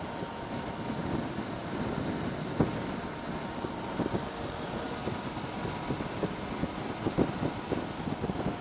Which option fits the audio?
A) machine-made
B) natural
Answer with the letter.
B